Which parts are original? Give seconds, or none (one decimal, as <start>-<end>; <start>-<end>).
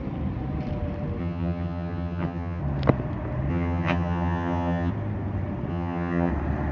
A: 0.0-1.2; 2.6-3.5; 4.9-5.7; 6.3-6.7